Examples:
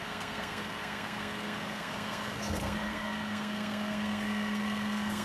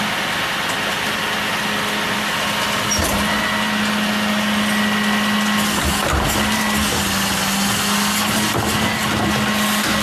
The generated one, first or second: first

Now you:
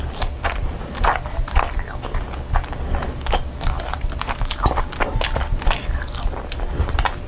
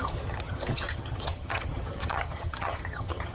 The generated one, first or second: second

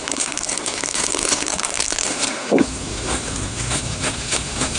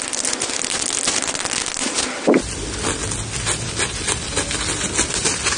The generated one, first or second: first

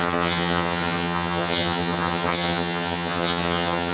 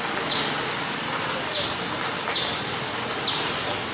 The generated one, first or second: first